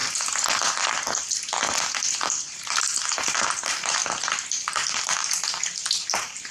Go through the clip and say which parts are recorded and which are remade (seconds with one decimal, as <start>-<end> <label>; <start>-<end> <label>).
0.0-2.3 recorded; 2.3-2.9 remade; 2.9-3.4 recorded; 3.4-4.0 remade; 4.0-6.1 recorded; 6.1-6.5 remade